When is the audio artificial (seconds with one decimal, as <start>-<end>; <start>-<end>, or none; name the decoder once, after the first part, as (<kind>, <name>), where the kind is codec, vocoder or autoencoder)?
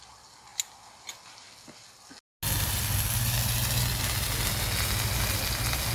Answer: none